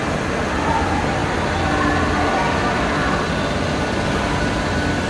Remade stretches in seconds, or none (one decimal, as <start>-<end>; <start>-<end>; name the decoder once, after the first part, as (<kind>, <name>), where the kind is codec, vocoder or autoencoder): none